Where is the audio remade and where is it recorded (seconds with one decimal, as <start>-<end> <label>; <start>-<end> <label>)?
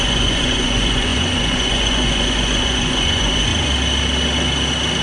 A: 0.0-3.5 remade; 3.5-5.0 recorded